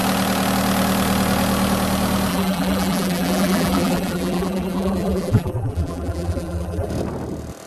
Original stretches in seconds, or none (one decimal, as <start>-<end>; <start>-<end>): 0.0-2.3; 6.9-7.7